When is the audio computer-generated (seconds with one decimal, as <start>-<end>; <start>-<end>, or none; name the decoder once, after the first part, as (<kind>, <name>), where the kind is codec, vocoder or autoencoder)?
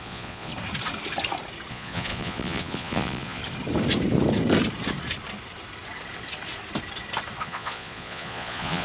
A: 0.0-0.5 (vocoder, Vocos); 1.7-3.4; 7.4-8.8